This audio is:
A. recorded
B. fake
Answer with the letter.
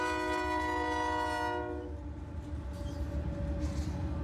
A